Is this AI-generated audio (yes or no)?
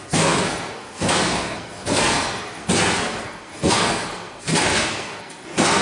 yes